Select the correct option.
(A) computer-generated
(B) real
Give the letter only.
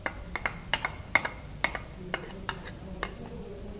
B